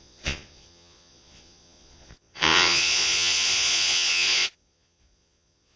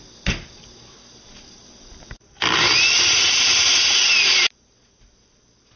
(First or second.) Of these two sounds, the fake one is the first